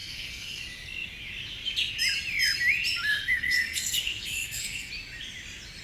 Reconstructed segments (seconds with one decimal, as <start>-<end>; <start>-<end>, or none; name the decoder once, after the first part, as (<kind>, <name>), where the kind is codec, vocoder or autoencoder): 0.0-0.6 (codec, SNAC); 3.1-4.9